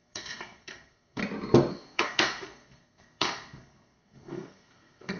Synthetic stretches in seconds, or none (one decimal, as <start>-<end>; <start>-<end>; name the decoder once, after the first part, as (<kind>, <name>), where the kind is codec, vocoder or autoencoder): 0.0-1.2 (codec, SNAC); 1.7-5.2